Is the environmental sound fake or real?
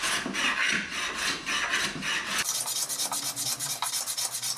real